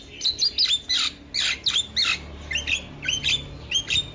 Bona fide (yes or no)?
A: yes